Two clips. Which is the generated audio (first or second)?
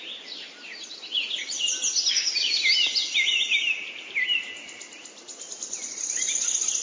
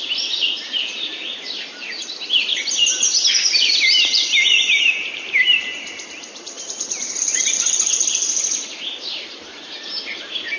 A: second